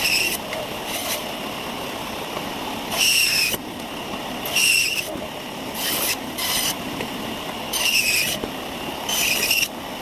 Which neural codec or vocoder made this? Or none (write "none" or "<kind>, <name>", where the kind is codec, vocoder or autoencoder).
none